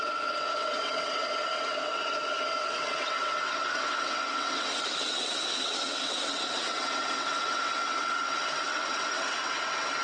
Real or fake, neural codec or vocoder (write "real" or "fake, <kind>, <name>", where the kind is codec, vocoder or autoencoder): fake, vocoder, WaveNeXt